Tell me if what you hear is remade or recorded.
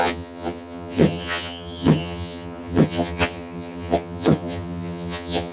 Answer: remade